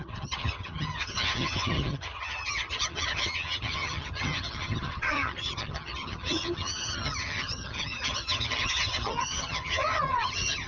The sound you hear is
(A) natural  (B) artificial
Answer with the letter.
B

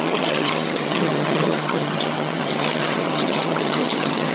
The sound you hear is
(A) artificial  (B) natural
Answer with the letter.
A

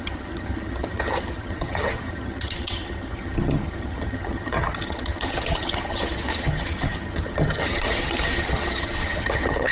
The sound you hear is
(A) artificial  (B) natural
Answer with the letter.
A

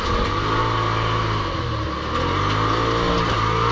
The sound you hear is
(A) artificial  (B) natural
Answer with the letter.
B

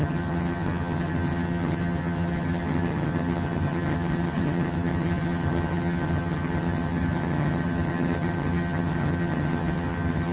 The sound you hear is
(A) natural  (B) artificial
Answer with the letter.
B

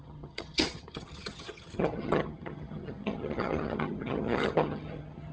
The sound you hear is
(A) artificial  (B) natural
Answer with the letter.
A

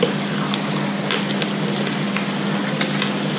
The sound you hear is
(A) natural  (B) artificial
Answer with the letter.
A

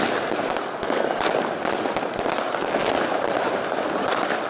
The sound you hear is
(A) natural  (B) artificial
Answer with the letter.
A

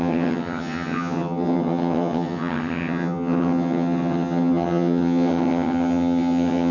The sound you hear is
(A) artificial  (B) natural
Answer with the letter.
A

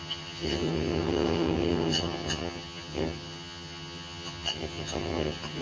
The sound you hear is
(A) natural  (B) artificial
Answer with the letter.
B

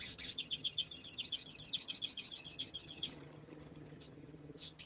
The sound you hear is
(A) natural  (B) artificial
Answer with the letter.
B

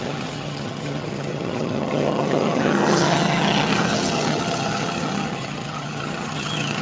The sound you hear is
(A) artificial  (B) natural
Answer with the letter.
A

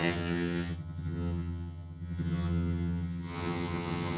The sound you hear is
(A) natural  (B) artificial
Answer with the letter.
B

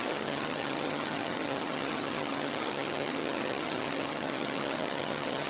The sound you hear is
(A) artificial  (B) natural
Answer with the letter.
A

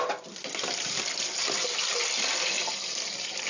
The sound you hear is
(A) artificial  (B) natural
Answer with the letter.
B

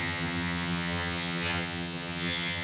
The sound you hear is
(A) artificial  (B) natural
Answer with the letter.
A